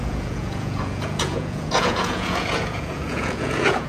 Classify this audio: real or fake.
fake